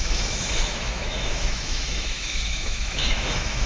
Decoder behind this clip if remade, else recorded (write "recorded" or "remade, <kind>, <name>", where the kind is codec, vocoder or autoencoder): remade, autoencoder, DAC-VAE